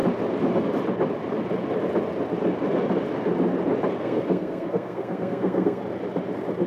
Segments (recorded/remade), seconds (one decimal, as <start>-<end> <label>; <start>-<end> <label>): 0.0-4.0 recorded; 4.0-5.8 remade; 5.8-6.7 recorded